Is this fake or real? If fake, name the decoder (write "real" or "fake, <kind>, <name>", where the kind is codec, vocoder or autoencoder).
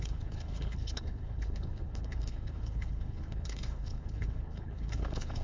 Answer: fake, codec, HILCodec